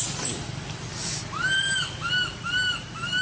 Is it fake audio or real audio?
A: real